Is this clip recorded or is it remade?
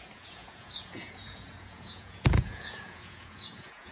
remade